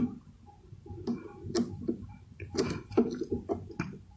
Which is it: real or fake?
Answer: real